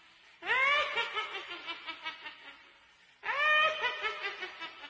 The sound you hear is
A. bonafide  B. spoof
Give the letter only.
A